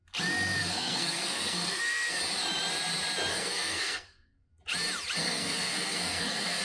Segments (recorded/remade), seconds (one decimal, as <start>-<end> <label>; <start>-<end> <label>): 0.0-0.6 recorded; 0.6-2.2 remade; 2.2-3.3 recorded; 3.3-4.5 remade; 4.5-5.2 recorded; 5.2-6.6 remade